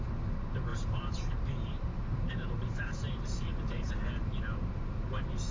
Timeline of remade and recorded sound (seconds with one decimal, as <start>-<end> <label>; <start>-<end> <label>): 0.0-0.7 recorded; 0.7-3.9 remade; 3.9-5.5 recorded